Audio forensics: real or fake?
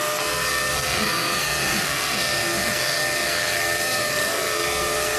fake